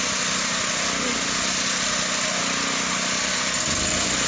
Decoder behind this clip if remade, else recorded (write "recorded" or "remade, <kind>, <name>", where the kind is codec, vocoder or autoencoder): recorded